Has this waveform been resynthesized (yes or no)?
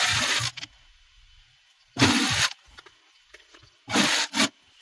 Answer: no